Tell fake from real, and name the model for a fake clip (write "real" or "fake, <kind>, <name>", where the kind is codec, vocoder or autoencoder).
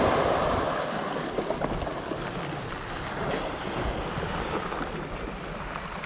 real